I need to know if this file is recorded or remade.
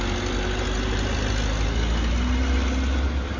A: recorded